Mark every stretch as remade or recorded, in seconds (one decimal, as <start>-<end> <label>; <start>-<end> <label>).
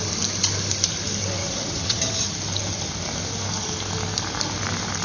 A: 0.0-1.4 recorded; 1.4-2.3 remade; 2.3-5.0 recorded